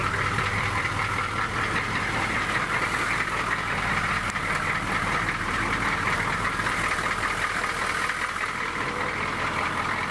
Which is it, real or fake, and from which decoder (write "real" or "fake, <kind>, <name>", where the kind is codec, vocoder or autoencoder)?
fake, vocoder, BigVGAN v2